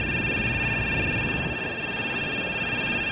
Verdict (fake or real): real